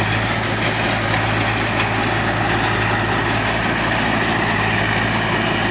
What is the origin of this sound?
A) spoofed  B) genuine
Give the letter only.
B